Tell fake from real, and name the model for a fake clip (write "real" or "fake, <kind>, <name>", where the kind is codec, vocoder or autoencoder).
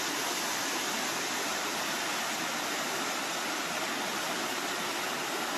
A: real